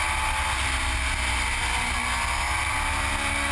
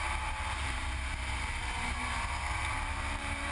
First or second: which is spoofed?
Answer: second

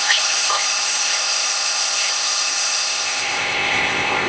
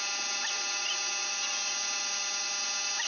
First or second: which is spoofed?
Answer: first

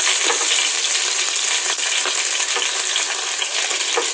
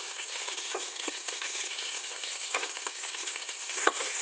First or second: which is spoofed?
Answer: second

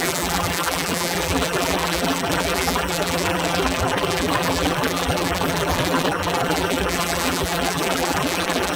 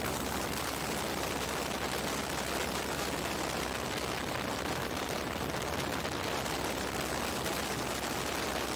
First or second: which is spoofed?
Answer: first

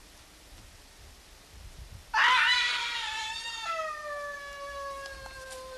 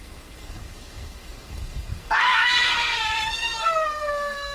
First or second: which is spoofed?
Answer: second